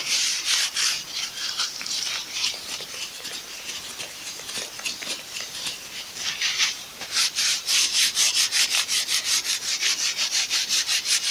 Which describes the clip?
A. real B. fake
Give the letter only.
B